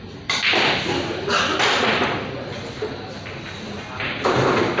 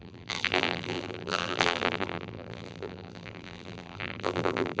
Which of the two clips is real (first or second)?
first